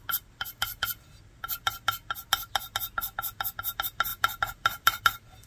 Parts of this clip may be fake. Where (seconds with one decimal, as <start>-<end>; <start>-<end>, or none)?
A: none